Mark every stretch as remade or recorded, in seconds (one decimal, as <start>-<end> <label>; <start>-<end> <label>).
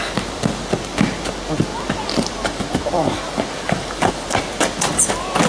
0.0-5.5 recorded